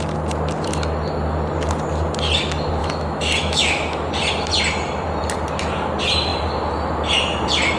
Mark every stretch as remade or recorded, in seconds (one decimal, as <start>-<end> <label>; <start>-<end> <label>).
0.0-2.8 recorded; 2.8-4.1 remade; 4.1-7.8 recorded